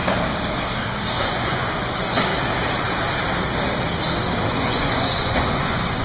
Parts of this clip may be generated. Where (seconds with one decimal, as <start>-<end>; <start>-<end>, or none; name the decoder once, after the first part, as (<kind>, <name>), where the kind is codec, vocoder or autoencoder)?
1.2-2.3 (vocoder, Vocos); 4.5-6.0